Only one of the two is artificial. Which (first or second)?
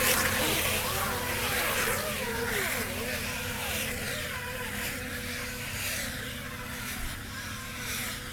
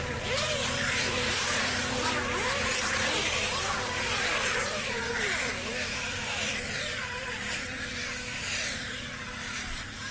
second